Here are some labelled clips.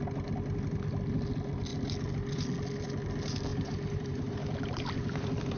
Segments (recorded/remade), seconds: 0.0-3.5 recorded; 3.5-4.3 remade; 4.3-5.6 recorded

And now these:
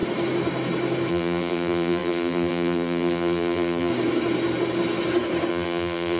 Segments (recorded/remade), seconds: 0.0-1.1 recorded; 1.1-3.9 remade; 3.9-5.5 recorded; 5.5-6.2 remade

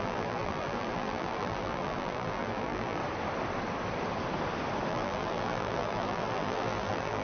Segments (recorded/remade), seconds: 0.0-3.0 remade; 3.0-4.9 recorded; 4.9-7.2 remade

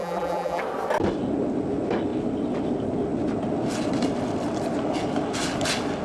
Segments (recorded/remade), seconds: 0.0-0.6 remade; 0.6-6.0 recorded

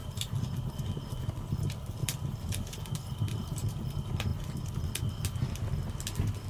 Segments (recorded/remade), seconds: 0.0-0.7 remade; 0.7-2.0 recorded; 2.0-3.8 remade; 3.8-6.5 recorded

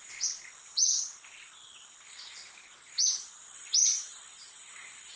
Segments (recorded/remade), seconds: 0.0-0.7 recorded; 0.7-1.5 remade; 1.5-5.2 recorded